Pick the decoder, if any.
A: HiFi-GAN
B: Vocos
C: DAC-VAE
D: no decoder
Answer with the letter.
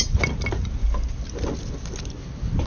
D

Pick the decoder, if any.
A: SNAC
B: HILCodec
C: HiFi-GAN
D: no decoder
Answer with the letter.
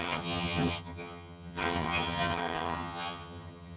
C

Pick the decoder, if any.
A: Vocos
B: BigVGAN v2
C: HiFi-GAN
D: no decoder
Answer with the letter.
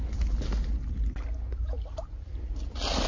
D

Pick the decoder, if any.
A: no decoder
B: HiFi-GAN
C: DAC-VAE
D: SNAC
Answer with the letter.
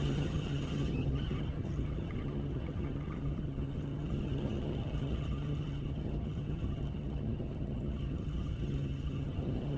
B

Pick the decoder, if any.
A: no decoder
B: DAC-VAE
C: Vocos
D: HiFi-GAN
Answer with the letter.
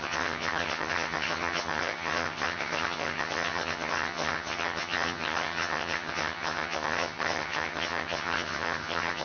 D